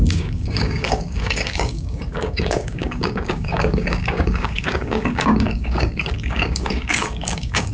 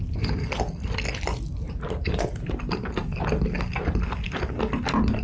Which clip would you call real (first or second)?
second